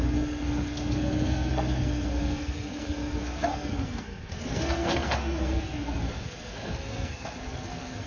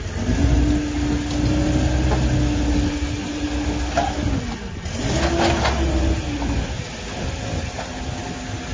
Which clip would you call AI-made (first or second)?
first